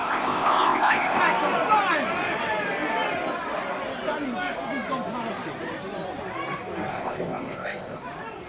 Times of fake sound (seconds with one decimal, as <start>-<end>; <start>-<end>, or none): 0.0-1.2; 6.9-8.0